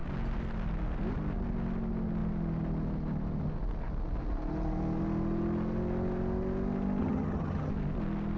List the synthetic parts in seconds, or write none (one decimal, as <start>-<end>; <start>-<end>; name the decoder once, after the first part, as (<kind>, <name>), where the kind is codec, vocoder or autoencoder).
7.0-7.7 (vocoder, HiFi-GAN)